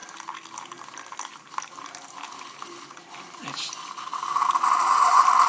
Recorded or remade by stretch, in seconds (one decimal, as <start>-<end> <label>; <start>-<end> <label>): 0.0-5.5 recorded